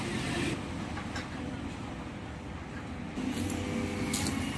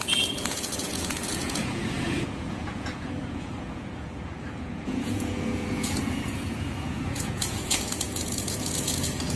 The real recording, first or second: first